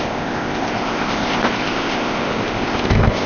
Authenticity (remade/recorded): remade